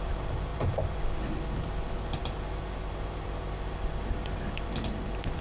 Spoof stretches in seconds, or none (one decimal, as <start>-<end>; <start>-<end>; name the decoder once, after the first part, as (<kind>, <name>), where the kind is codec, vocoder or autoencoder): 0.5-1.2 (vocoder, BigVGAN v2)

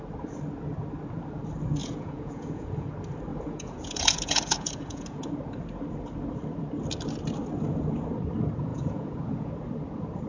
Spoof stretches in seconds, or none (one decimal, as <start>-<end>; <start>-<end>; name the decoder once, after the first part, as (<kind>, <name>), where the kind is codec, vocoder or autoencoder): 1.8-2.9 (vocoder, Vocos); 3.3-5.3; 8.7-9.5

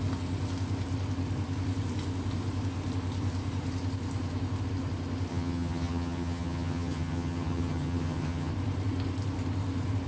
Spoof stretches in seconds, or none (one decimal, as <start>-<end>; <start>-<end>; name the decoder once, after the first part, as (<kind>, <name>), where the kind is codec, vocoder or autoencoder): 5.3-8.5 (vocoder, HiFi-GAN)

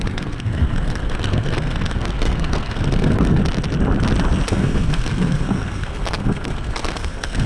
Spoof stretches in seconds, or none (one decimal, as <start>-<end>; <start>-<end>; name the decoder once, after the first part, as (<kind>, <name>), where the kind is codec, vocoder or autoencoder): 0.0-3.4 (codec, SNAC); 4.5-7.5